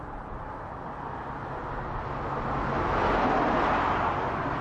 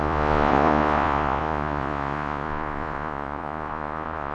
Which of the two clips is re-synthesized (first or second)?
second